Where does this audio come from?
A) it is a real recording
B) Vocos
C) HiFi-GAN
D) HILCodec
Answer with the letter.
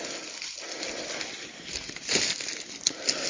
A